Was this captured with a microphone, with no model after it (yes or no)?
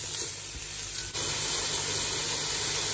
yes